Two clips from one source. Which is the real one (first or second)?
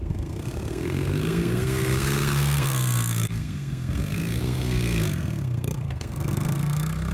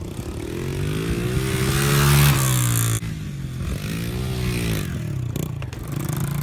second